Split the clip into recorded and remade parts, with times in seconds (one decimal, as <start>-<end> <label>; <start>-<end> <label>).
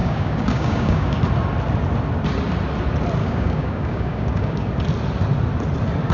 0.0-1.2 remade; 1.2-3.2 recorded; 3.2-4.7 remade; 4.7-6.1 recorded